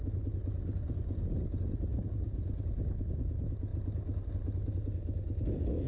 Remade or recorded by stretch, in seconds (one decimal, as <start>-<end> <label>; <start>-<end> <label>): 0.0-1.9 recorded; 1.9-2.6 remade; 2.6-5.9 recorded